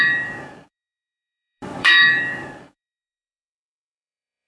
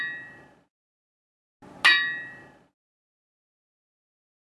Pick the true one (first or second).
second